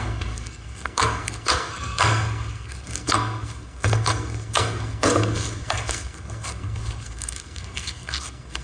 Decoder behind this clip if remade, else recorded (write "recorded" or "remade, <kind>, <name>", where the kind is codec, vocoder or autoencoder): remade, codec, SNAC